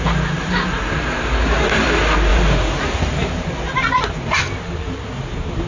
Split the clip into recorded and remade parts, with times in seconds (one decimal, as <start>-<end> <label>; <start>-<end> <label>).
0.0-5.7 recorded